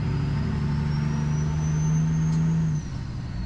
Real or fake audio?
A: real